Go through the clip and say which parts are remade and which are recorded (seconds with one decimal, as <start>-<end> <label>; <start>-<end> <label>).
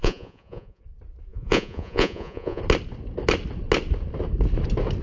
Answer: 0.0-0.8 remade; 0.8-1.3 recorded; 1.3-2.6 remade; 2.6-5.0 recorded